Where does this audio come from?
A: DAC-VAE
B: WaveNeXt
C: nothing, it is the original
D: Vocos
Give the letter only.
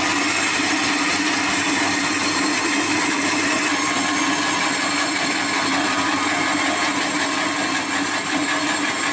C